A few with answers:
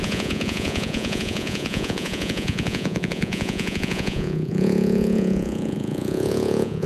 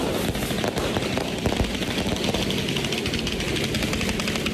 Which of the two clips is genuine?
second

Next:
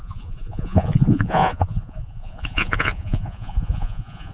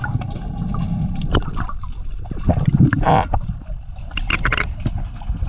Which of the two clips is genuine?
second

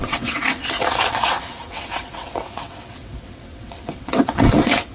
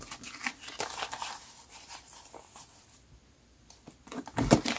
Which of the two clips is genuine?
second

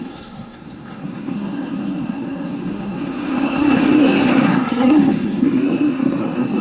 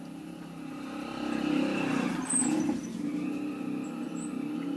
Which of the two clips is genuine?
second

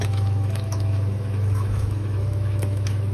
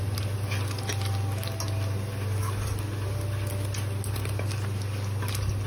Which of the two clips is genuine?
second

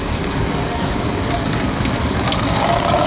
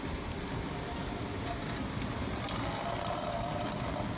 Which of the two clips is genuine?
second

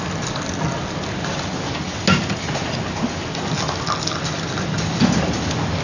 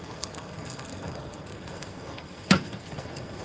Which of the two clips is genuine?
first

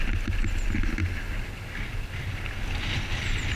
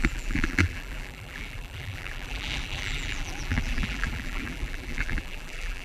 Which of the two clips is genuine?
first